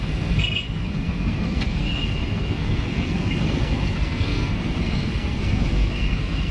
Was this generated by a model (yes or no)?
yes